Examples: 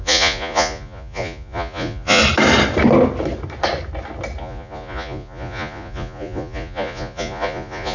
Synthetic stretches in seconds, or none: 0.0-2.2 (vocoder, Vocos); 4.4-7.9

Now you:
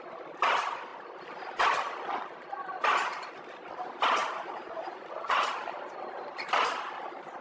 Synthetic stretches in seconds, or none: 4.2-5.5 (vocoder, Vocos)

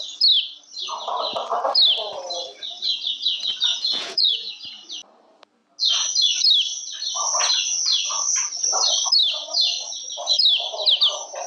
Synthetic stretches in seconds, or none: 3.7-4.5 (vocoder, Vocos)

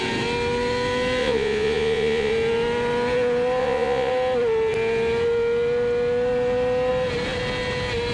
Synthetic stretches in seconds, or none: 1.2-2.3 (vocoder, Vocos); 3.6-4.1

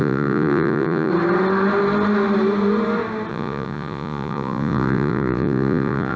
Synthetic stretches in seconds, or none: 0.0-1.1 (vocoder, Vocos); 3.3-6.2